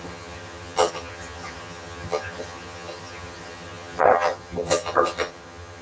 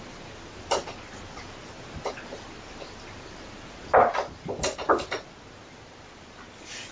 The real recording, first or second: second